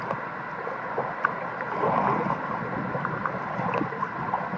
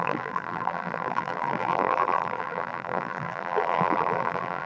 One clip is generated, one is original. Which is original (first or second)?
first